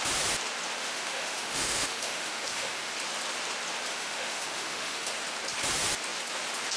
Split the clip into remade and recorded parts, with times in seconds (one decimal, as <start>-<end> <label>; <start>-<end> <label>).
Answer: 0.0-0.8 recorded; 0.8-2.9 remade; 2.9-3.9 recorded; 3.9-5.1 remade; 5.1-6.8 recorded